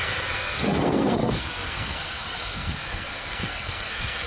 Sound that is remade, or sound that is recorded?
remade